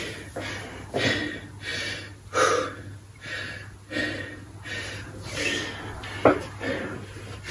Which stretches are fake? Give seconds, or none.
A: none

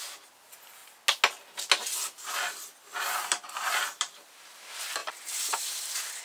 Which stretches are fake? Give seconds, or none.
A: 5.0-6.2 (vocoder, BigVGAN v2)

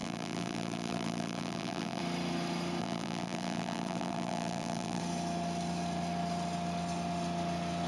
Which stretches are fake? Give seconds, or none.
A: 0.0-2.0 (vocoder, BigVGAN v2); 2.8-5.0

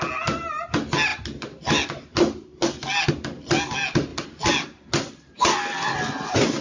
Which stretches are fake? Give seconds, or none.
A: none

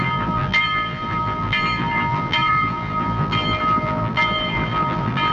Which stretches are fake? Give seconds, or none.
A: 0.0-5.3 (vocoder, BigVGAN v2)

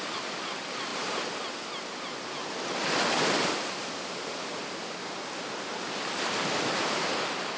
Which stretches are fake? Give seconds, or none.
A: 0.0-7.6 (vocoder, BigVGAN v2)

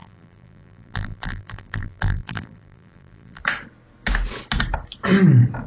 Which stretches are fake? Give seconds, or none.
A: 0.0-3.4 (vocoder, BigVGAN v2)

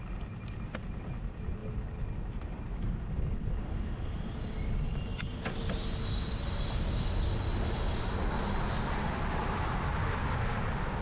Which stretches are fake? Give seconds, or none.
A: 5.1-6.8 (vocoder, BigVGAN v2)